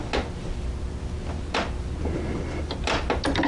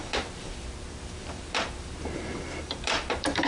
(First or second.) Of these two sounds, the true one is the first